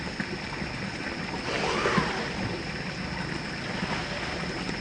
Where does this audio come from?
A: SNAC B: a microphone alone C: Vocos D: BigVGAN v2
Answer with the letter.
B